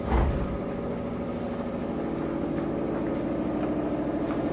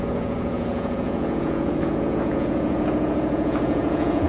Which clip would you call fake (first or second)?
second